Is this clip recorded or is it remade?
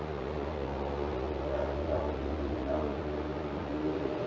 remade